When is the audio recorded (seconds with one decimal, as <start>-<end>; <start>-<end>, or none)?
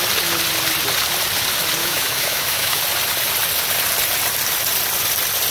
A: 0.0-1.8; 2.8-5.5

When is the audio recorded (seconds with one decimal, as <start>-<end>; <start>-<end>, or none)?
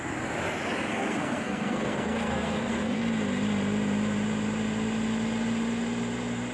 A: 0.0-0.9; 3.0-6.5